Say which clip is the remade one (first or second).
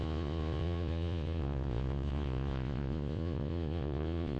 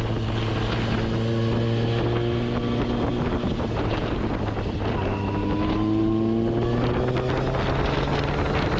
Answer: first